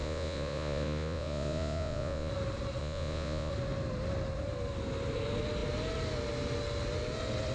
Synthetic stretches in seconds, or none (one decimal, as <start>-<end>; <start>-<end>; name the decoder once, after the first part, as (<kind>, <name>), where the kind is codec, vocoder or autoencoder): 0.0-2.3 (vocoder, Vocos); 2.8-3.5